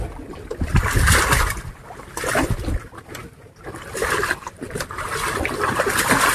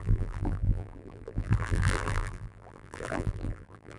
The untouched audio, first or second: first